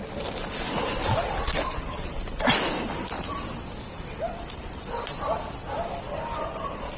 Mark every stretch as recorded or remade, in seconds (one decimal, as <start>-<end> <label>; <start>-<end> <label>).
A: 0.0-7.0 recorded